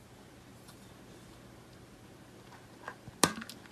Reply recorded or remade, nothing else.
recorded